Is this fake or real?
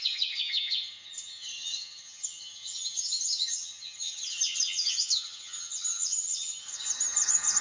fake